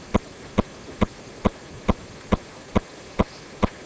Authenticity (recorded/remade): recorded